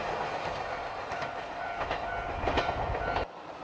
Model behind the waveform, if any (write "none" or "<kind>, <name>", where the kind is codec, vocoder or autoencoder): none